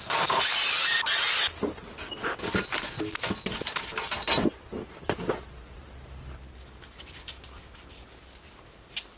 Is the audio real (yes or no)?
yes